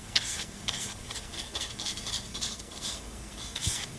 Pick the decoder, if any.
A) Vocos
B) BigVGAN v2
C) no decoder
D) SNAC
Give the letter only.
D